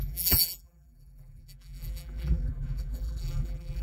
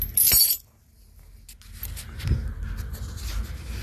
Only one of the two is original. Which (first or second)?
second